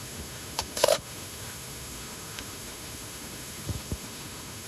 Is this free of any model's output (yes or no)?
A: no